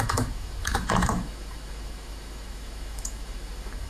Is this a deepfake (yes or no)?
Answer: yes